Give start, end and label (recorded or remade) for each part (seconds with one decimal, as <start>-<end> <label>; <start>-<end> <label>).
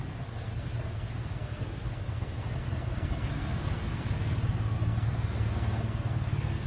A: 0.0-6.7 remade